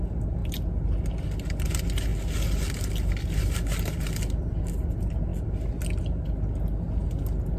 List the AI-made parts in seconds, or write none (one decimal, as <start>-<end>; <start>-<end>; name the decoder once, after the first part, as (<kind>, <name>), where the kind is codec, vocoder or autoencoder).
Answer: none